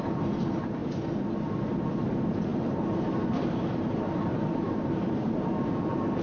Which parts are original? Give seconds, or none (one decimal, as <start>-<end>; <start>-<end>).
0.8-1.8